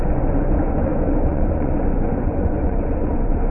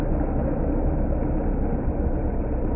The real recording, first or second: second